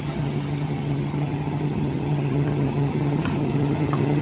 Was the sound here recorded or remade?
remade